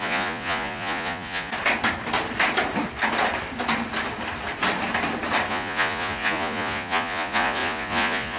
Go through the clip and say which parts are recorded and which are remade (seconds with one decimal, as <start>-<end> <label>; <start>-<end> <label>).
0.0-1.5 remade; 1.5-5.5 recorded; 5.5-8.4 remade